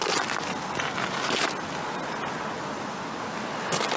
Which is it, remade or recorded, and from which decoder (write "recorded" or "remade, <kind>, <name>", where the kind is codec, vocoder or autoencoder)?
recorded